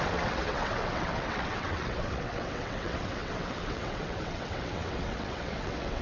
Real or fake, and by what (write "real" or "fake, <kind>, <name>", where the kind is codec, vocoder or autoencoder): fake, vocoder, WaveNeXt